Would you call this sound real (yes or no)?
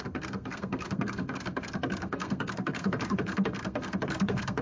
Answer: no